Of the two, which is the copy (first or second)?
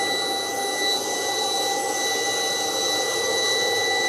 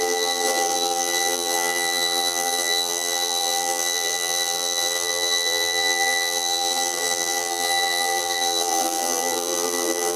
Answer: second